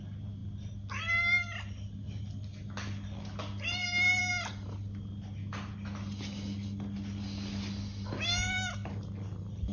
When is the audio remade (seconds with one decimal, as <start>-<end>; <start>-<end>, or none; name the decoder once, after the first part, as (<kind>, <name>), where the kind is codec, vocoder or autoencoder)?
none